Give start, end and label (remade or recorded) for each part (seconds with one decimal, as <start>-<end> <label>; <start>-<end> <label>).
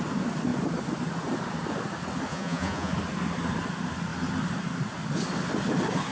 0.0-2.3 recorded; 2.3-2.9 remade; 2.9-6.1 recorded